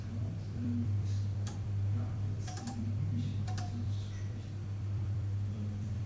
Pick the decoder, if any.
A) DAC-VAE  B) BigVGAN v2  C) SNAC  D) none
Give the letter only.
B